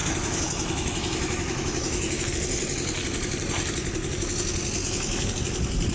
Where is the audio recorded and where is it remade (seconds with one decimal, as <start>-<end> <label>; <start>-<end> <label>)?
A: 0.0-2.3 remade; 2.3-4.8 recorded; 4.8-5.3 remade; 5.3-5.9 recorded